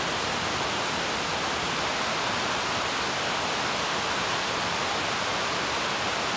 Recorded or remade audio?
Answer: recorded